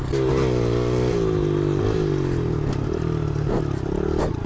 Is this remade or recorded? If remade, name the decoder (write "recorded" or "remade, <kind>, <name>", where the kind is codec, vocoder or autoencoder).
recorded